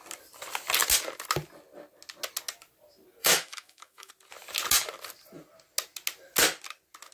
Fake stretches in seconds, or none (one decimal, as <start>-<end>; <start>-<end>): 3.2-4.1